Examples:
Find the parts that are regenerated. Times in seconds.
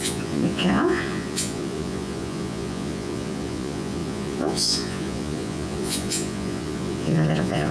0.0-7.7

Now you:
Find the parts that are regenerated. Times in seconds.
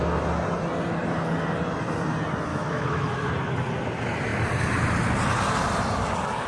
2.5-3.3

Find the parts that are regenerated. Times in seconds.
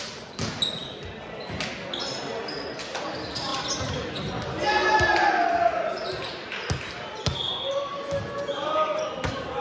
none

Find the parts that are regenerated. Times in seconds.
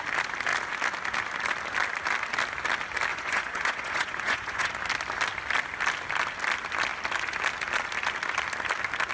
3.1-4.7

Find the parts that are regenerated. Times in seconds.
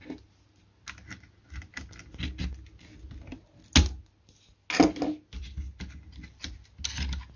none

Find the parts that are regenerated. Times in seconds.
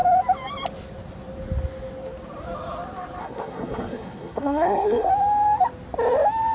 3.2-5.1